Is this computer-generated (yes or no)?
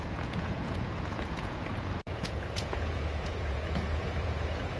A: yes